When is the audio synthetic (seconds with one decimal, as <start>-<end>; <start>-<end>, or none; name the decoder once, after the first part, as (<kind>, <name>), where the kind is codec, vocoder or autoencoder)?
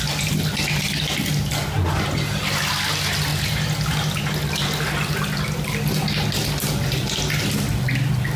none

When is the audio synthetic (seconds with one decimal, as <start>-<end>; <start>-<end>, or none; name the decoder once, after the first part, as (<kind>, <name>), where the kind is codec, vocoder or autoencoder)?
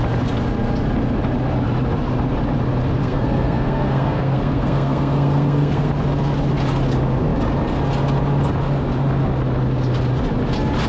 3.0-5.9 (codec, SNAC)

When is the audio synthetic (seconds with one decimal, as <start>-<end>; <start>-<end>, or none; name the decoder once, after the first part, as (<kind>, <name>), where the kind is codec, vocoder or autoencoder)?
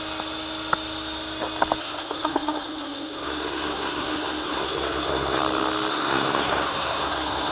1.8-5.4 (codec, SNAC); 5.9-7.5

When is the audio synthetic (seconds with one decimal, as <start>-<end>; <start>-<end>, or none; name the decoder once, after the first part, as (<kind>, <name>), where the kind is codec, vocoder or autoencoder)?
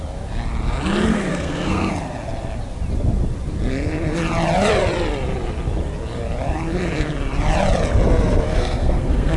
1.1-1.9 (codec, SNAC); 8.5-9.4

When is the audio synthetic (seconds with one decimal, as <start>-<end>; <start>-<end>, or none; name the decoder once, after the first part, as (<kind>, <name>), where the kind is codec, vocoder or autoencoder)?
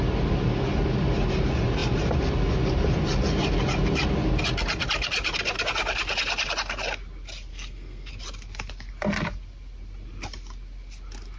7.5-8.1 (codec, SNAC)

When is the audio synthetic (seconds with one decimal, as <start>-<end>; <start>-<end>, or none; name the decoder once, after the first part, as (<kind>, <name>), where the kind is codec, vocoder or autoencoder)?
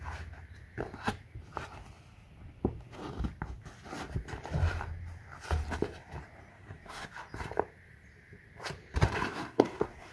6.5-7.1 (codec, SNAC); 9.3-10.1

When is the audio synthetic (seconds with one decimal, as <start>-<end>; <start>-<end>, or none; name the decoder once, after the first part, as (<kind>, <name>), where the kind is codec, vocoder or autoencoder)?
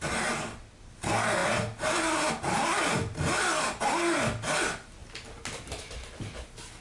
none